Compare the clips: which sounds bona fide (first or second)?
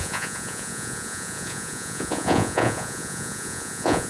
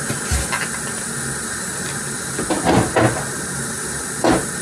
second